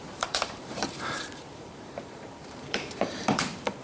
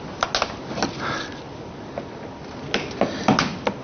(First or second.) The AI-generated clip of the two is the first